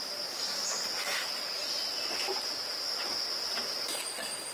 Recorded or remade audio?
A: recorded